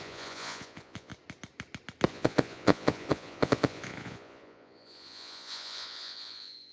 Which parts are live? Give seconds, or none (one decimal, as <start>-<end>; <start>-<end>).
1.1-2.1